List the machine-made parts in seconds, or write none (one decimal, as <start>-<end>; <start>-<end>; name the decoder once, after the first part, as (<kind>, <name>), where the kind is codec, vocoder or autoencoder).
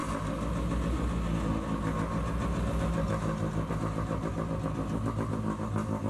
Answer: none